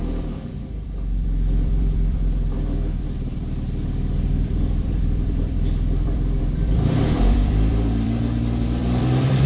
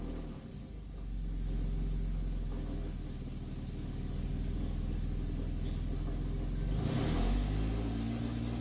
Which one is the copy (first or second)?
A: first